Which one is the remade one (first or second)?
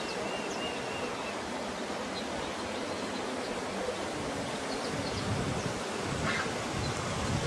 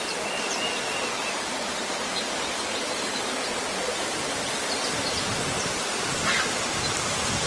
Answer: second